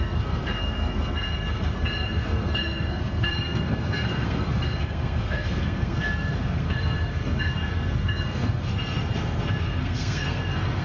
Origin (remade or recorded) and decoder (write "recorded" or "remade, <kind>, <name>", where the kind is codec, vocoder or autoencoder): remade, codec, SNAC